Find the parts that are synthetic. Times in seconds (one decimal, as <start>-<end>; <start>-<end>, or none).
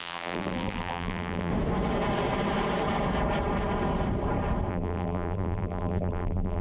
0.0-1.5; 4.7-6.6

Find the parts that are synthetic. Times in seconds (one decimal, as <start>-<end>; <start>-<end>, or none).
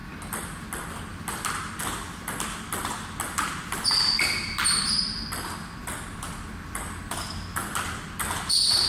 0.0-0.6; 1.1-1.8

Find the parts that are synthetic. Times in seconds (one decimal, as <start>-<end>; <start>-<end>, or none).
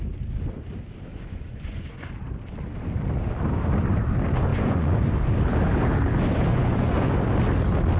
1.1-1.9; 4.5-5.1; 6.5-7.1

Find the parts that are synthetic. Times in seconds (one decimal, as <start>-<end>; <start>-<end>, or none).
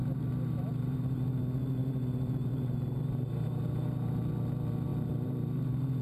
0.0-1.4; 1.8-4.3; 4.9-6.0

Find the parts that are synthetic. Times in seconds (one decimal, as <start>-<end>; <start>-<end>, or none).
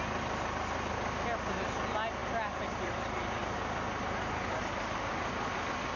none